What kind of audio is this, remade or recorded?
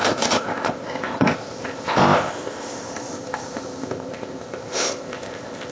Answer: remade